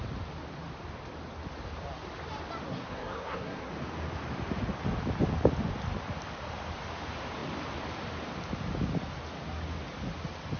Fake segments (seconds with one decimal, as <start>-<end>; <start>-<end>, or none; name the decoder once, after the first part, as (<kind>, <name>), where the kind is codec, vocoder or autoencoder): 2.7-3.7 (codec, SNAC)

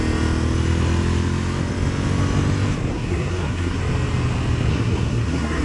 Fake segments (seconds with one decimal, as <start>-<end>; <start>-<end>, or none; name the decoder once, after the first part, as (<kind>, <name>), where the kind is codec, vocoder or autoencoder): 2.9-3.8 (codec, SNAC); 4.7-5.6